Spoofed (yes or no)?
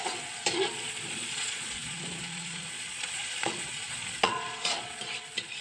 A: yes